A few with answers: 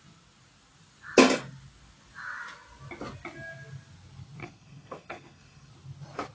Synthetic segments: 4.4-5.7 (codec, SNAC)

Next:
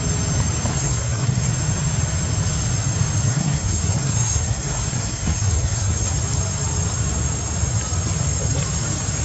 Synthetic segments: 0.7-1.5 (codec, SNAC); 3.3-6.1

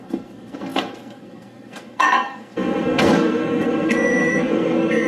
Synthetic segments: 0.0-5.1 (codec, SNAC)